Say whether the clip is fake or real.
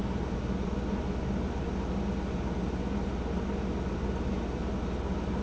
real